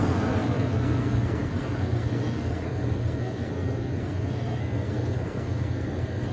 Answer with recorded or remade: remade